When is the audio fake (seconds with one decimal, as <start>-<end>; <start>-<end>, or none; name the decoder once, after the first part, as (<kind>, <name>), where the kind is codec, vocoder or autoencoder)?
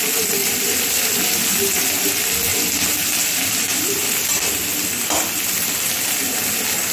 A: 0.4-2.1 (vocoder, BigVGAN v2); 2.5-6.5